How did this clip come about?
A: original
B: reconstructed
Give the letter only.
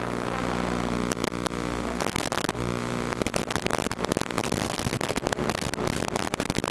A